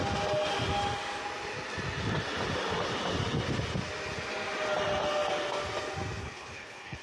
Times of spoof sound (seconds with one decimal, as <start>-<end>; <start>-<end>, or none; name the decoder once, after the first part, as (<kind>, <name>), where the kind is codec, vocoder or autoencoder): 6.2-7.0 (codec, HILCodec)